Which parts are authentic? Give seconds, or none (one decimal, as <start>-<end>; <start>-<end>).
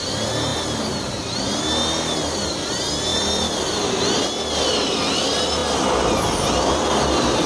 0.0-3.1; 3.6-5.6; 6.7-7.5